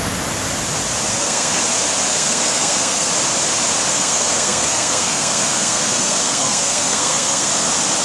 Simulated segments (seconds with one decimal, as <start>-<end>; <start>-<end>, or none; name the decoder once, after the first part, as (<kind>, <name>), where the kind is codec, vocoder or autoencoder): 1.1-1.6 (codec, SNAC); 2.1-3.1; 3.9-7.5